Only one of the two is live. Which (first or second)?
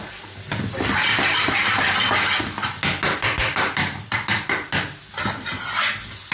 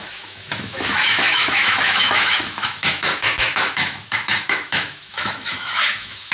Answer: first